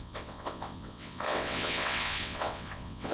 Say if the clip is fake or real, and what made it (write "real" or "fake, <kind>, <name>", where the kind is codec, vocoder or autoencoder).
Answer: fake, vocoder, WaveNeXt